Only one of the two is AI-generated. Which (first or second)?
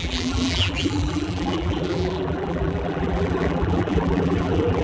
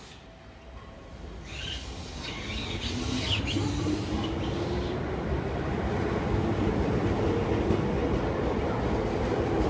first